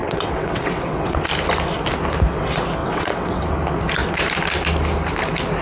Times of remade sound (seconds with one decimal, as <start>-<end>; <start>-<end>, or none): 0.0-1.2; 2.8-3.5